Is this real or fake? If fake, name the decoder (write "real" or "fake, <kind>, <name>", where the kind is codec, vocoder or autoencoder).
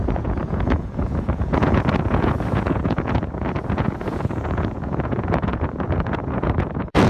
fake, vocoder, Vocos